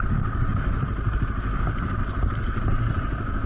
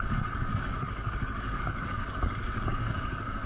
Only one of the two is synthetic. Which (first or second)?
second